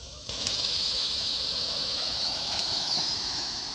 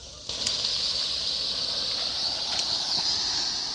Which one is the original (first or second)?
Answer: second